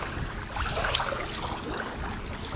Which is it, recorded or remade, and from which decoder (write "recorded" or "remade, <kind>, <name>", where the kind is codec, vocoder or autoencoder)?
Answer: recorded